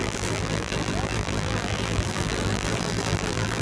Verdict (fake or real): fake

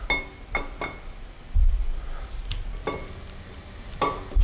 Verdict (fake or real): real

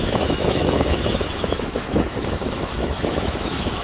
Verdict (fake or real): fake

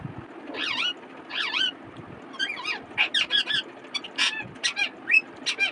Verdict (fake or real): real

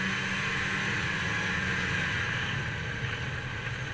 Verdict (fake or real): real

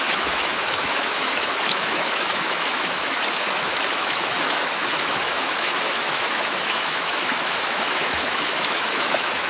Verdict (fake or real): fake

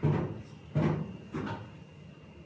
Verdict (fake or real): real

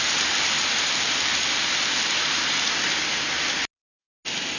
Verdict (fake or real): real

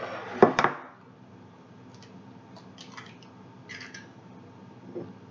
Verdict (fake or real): real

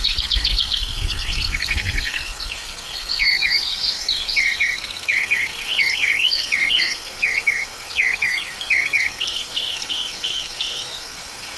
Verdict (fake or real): fake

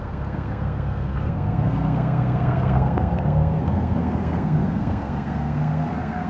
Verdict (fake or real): fake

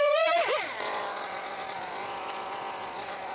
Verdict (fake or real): fake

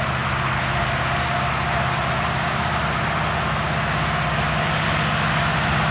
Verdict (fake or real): real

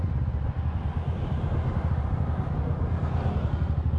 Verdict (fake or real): real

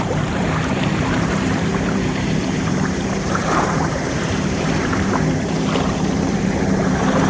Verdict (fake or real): fake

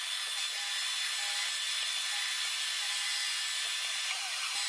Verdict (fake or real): real